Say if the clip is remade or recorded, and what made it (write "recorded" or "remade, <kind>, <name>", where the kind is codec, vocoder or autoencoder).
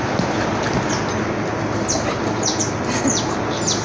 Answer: recorded